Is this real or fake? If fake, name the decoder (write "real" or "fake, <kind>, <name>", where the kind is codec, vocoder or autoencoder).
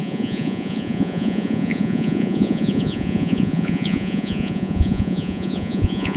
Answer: fake, vocoder, Vocos